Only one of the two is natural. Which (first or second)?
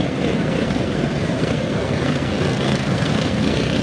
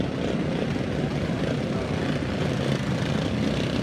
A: second